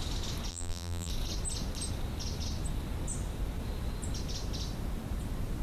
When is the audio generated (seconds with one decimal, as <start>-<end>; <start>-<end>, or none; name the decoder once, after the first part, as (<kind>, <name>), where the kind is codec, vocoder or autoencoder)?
0.5-1.1 (vocoder, BigVGAN v2)